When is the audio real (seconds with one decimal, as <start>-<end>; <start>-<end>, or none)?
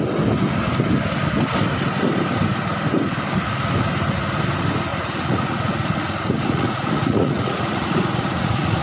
0.0-4.9